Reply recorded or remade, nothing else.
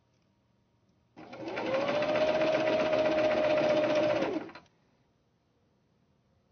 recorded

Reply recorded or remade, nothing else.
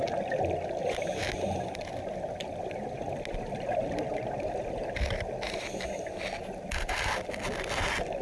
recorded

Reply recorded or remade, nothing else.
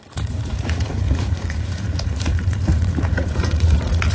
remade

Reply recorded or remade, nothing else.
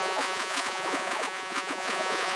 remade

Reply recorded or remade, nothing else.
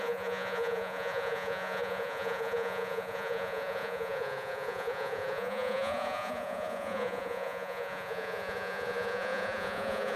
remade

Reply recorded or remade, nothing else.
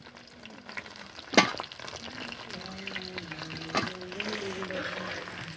recorded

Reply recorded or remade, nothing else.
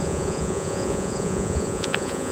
remade